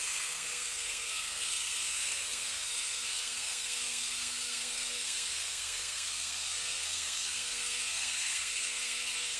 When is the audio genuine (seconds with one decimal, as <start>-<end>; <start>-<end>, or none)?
none